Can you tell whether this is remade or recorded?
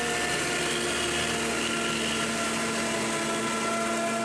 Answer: recorded